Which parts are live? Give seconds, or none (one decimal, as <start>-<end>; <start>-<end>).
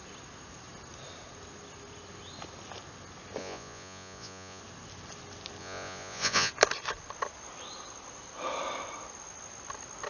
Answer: 0.0-3.4; 4.6-5.6; 6.5-10.1